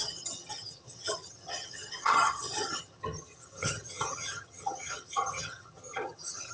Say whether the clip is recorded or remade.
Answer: remade